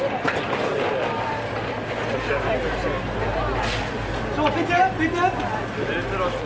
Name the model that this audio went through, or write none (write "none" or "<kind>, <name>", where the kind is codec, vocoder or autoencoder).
none